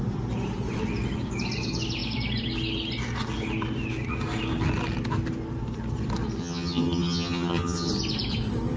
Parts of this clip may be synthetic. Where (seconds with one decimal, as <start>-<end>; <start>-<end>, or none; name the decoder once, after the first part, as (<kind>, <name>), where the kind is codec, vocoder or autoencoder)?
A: 6.4-7.9 (vocoder, HiFi-GAN)